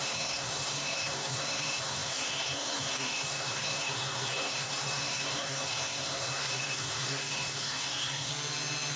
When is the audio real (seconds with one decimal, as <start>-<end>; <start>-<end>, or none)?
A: 8.3-9.0